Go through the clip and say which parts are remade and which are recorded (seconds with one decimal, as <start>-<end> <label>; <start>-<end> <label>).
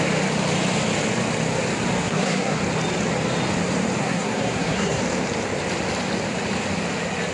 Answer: 0.0-2.0 recorded; 2.0-2.6 remade; 2.6-4.0 recorded; 4.0-5.0 remade; 5.0-7.3 recorded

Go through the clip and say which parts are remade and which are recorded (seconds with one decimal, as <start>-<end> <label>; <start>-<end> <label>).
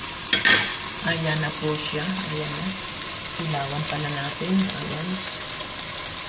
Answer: 0.0-6.3 recorded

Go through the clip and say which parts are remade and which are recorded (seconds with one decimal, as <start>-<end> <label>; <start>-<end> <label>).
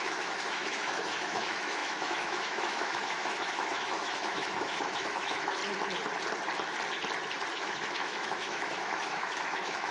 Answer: 0.0-5.6 remade; 5.6-7.5 recorded; 7.5-9.9 remade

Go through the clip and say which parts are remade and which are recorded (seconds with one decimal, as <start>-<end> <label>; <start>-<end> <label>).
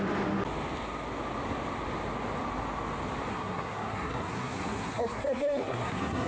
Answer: 0.0-3.3 recorded; 3.3-6.3 remade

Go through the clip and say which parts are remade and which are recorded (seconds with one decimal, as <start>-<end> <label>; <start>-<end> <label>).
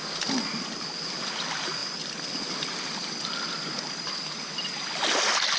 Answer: 0.0-5.6 recorded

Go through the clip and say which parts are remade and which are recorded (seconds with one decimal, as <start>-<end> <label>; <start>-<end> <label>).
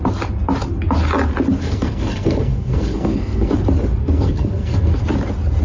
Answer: 0.0-1.6 recorded; 1.6-3.5 remade; 3.5-4.0 recorded; 4.0-5.0 remade; 5.0-5.6 recorded